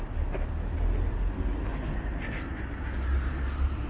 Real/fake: real